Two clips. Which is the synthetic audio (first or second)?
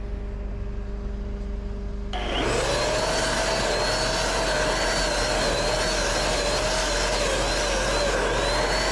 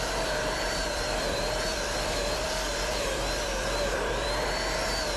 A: second